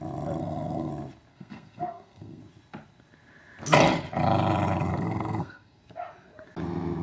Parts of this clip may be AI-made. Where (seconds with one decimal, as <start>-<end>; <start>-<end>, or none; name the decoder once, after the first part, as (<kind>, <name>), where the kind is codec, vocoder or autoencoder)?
0.4-0.9 (codec, SNAC); 1.3-2.4; 4.9-5.8